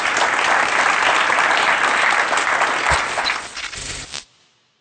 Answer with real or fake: real